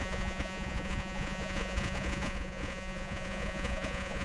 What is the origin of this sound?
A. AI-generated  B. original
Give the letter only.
A